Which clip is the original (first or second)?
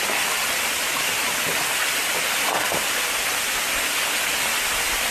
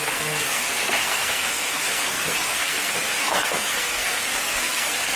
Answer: first